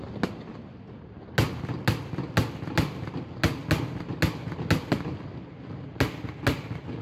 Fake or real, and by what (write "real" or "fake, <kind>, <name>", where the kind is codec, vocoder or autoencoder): real